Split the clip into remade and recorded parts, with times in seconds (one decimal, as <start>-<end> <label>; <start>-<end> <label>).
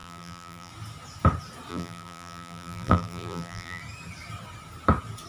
0.0-0.7 remade; 0.7-1.7 recorded; 1.7-3.8 remade; 3.8-5.3 recorded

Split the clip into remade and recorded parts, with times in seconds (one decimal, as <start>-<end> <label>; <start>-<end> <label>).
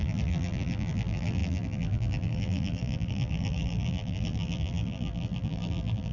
0.0-6.1 remade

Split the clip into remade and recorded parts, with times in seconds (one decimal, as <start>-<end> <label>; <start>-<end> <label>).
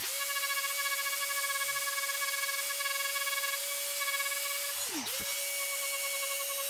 0.0-6.7 recorded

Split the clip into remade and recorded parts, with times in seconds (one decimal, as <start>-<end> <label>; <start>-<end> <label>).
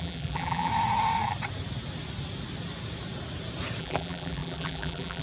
0.0-0.7 remade; 0.7-3.8 recorded; 3.8-5.2 remade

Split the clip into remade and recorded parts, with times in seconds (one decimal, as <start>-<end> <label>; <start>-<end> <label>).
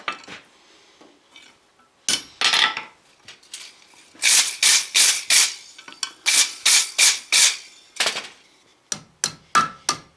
0.0-10.2 recorded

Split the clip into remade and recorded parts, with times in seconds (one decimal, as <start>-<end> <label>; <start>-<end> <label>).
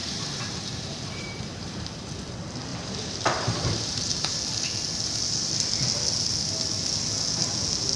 0.0-2.1 remade; 2.1-2.7 recorded; 2.7-4.4 remade; 4.4-8.0 recorded